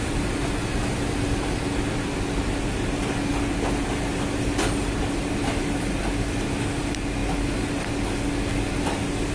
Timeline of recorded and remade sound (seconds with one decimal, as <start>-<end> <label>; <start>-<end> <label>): 0.0-9.3 recorded